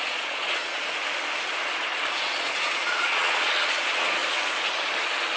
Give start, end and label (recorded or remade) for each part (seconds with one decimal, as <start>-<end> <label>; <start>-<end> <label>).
0.0-0.8 remade; 0.8-2.2 recorded; 2.2-4.2 remade; 4.2-5.4 recorded